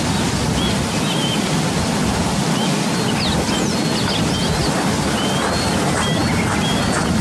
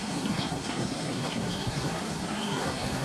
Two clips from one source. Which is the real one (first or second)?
first